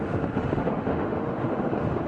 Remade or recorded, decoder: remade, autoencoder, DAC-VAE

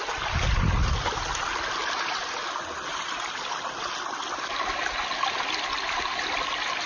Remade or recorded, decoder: recorded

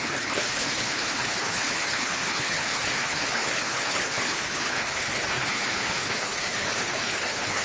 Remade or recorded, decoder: remade, codec, HILCodec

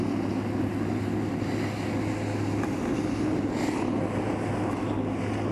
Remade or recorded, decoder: recorded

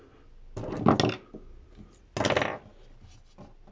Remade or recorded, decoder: recorded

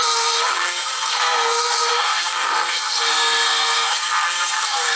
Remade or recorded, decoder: remade, codec, SNAC